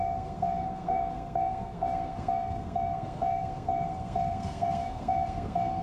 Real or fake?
fake